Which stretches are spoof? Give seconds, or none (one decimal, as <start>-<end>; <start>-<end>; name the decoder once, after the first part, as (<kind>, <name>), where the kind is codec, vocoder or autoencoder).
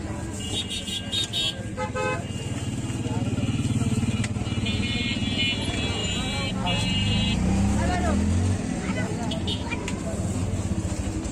none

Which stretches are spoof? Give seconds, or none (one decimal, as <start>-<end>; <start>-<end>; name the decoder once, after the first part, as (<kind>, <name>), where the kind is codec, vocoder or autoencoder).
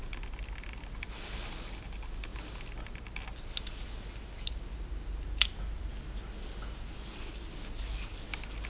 none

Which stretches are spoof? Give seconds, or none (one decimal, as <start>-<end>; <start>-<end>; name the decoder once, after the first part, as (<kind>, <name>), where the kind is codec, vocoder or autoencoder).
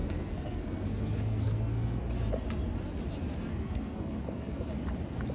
0.0-2.0 (codec, SNAC); 3.5-4.7